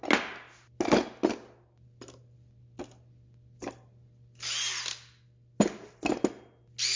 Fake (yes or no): no